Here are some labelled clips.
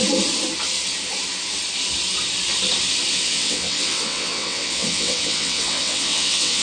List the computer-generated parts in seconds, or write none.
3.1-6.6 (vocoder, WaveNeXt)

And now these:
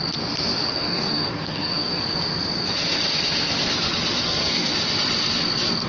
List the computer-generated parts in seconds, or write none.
0.7-2.0 (codec, SNAC); 4.2-4.7

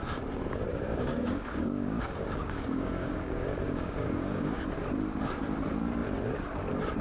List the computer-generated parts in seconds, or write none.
0.7-4.6 (codec, DAC)

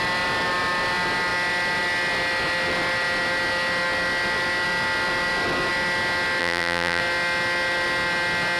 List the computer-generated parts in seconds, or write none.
6.4-7.0 (vocoder, BigVGAN v2)

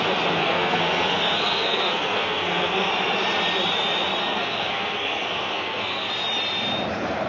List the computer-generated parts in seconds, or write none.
0.4-2.9 (codec, SNAC); 4.2-6.1

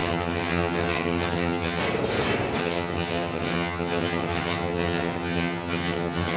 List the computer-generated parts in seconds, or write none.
0.0-1.8 (vocoder, HiFi-GAN); 2.6-6.4